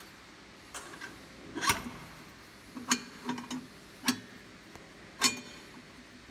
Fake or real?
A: real